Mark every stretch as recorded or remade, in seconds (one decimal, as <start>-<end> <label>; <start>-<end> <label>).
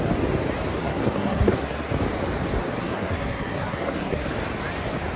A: 0.0-0.8 recorded; 0.8-1.9 remade; 1.9-2.8 recorded; 2.8-4.3 remade; 4.3-5.2 recorded